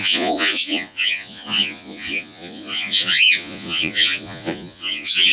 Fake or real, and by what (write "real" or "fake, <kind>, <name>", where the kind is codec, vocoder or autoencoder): fake, vocoder, Vocos